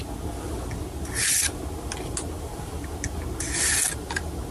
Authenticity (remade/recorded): recorded